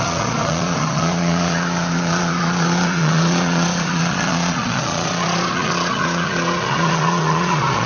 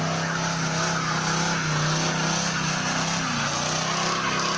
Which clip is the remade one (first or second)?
first